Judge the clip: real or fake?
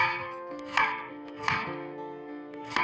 fake